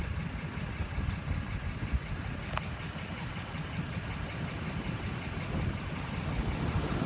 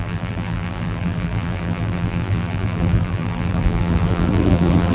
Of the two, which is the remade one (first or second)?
second